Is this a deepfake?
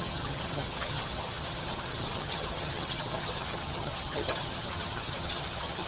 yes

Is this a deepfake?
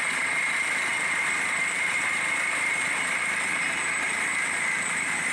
yes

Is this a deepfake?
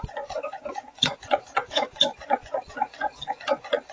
yes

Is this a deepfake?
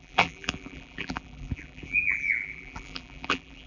yes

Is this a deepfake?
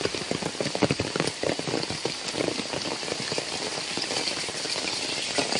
no